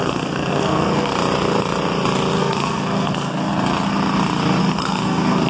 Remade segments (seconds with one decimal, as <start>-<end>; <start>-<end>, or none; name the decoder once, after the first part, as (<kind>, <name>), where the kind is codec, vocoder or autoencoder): 0.0-1.1 (codec, SNAC); 2.4-3.5; 4.6-5.5